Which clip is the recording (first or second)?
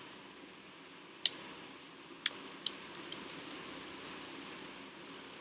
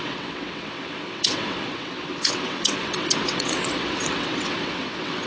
first